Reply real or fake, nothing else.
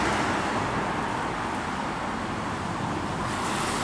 real